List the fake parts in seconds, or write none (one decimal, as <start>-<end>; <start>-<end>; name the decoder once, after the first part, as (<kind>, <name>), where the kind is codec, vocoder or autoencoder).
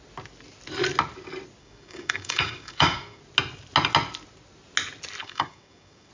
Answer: 1.6-3.2 (codec, DAC); 5.2-6.1